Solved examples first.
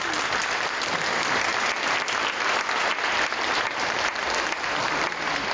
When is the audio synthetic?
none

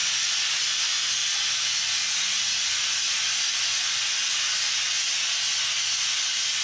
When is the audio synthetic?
none

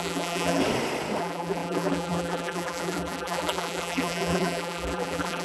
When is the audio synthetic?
0.0-0.6 (vocoder, BigVGAN v2); 1.2-5.4

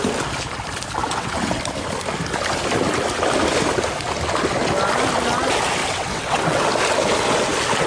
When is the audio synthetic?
1.0-1.6 (vocoder, WaveNeXt); 5.8-6.6

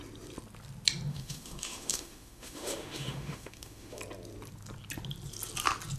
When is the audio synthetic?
1.1-4.0 (autoencoder, DAC-VAE)

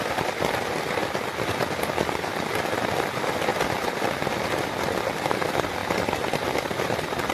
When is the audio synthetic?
5.8-6.6 (vocoder, BigVGAN v2)